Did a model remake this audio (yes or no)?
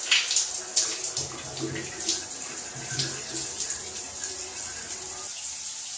no